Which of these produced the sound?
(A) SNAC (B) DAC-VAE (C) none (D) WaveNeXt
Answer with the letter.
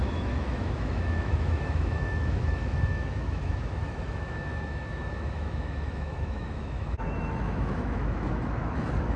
B